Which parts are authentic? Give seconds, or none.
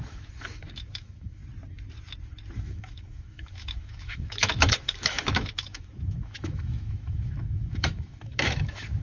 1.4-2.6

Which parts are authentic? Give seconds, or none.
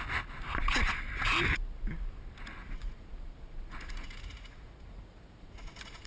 0.0-2.6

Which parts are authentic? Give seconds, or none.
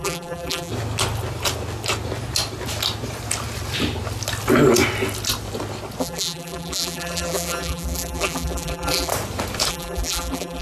0.7-6.0; 9.1-9.7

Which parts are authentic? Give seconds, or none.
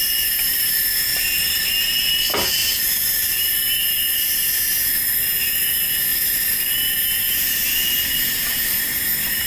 0.0-1.1; 1.7-9.5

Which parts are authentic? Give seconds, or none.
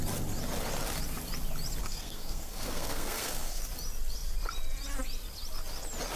0.0-1.8; 3.6-6.2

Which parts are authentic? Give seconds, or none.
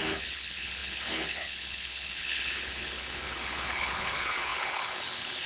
none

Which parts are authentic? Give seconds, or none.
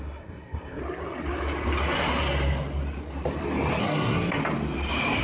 0.8-3.8; 4.4-5.2